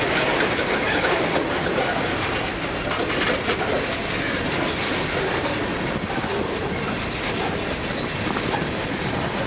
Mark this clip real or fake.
real